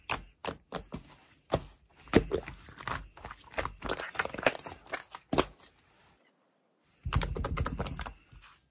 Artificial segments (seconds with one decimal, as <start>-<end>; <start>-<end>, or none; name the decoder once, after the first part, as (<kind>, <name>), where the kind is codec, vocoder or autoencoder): none